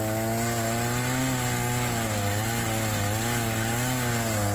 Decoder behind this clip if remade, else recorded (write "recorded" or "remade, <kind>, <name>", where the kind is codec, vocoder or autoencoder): recorded